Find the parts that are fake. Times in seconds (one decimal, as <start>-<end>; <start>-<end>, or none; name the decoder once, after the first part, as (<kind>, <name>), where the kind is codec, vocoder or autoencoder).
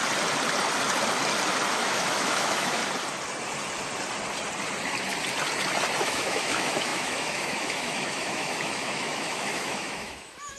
1.7-2.8 (autoencoder, DAC-VAE); 6.0-10.6